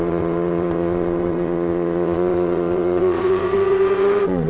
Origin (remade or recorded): remade